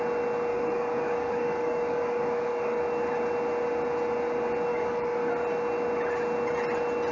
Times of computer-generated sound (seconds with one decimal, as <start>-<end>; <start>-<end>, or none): 0.5-2.8; 4.7-5.3